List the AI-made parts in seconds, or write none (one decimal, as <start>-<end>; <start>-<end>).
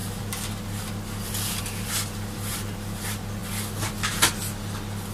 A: none